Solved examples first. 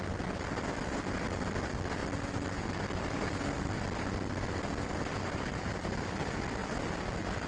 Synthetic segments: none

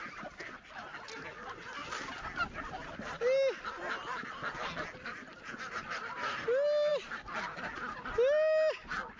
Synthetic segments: none

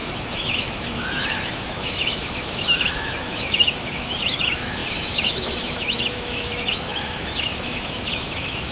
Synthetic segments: 0.0-8.7

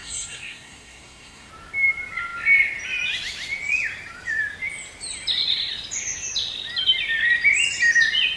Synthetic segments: 0.0-1.5

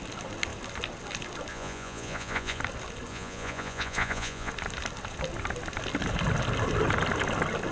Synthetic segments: 1.5-2.6; 3.1-4.5

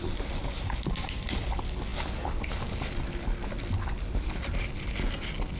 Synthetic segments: none